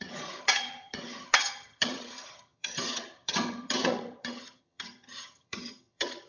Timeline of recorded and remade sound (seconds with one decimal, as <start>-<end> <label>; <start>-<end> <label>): 0.0-6.3 remade